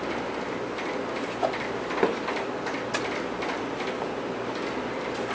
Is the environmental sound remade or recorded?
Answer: recorded